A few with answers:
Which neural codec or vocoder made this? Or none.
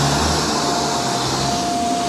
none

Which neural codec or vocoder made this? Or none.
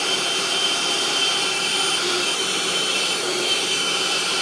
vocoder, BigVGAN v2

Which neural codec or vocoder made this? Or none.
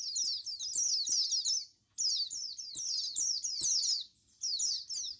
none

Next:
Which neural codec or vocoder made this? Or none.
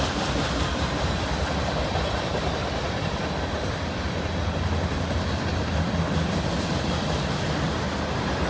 vocoder, BigVGAN v2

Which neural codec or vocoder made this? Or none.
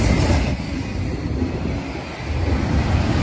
none